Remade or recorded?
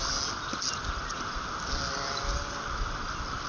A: recorded